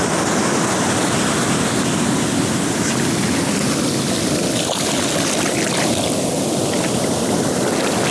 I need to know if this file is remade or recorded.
recorded